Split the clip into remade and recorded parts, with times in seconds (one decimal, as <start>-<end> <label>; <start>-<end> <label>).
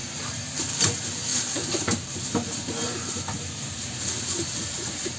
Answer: 0.0-0.8 remade; 0.8-1.3 recorded; 1.3-4.0 remade; 4.0-5.2 recorded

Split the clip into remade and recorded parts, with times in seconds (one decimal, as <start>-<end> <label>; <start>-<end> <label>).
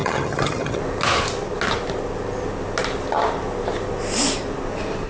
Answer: 0.0-0.8 remade; 0.8-5.1 recorded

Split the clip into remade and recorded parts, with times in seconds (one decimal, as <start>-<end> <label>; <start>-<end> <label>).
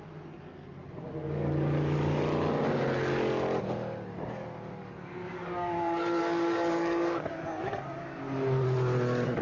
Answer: 0.0-1.2 recorded; 1.2-2.2 remade; 2.2-3.1 recorded; 3.1-8.2 remade; 8.2-9.4 recorded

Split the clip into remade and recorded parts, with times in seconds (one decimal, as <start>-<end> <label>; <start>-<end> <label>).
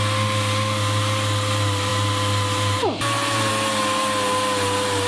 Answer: 0.0-5.1 recorded